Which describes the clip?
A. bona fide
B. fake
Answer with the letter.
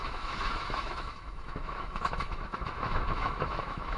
B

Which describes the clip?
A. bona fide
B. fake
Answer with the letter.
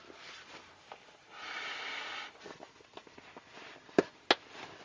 A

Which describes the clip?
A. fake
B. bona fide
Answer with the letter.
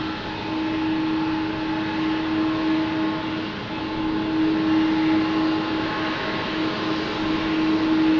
B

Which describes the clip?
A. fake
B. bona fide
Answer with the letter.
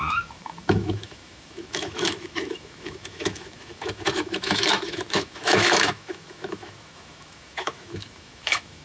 A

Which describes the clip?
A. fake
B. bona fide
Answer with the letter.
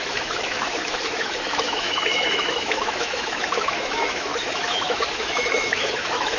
A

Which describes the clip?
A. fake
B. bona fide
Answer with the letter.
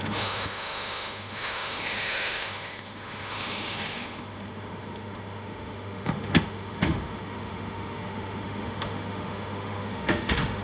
A